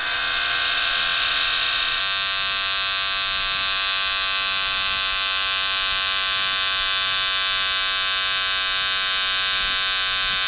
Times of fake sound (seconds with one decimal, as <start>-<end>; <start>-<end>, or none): 0.0-2.0